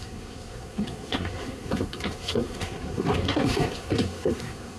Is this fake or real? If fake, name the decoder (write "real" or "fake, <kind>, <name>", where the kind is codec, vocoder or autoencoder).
fake, codec, SNAC